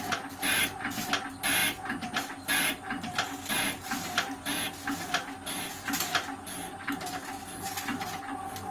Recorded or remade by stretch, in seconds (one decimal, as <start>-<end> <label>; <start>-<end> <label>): 0.0-8.7 recorded